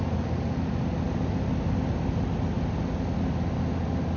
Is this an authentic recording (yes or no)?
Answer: yes